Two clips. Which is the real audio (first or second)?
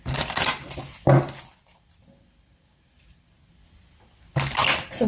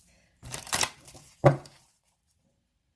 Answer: first